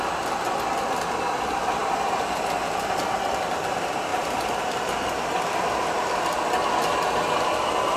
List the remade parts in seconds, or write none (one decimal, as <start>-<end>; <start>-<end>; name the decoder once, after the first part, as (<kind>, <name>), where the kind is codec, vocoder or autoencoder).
1.8-3.0 (vocoder, BigVGAN v2); 4.1-6.2